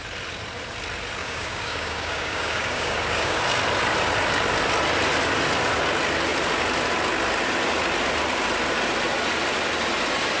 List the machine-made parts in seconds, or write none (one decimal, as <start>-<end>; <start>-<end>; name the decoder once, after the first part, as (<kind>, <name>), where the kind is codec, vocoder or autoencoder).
1.2-3.4 (codec, DAC)